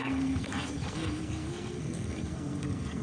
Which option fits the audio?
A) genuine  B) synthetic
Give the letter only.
B